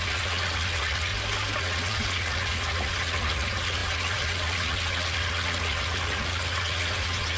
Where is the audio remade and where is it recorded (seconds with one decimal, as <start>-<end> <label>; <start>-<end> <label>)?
0.0-1.1 remade; 1.1-1.6 recorded; 1.6-7.4 remade